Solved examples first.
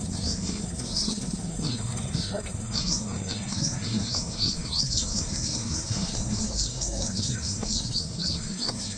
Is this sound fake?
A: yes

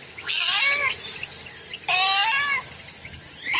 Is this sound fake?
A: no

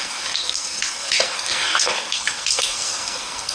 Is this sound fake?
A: yes